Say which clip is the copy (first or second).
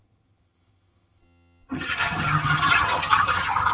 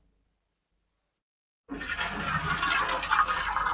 first